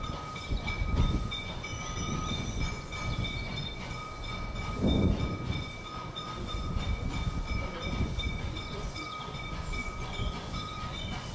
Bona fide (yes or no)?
no